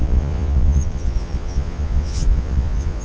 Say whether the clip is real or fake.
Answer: fake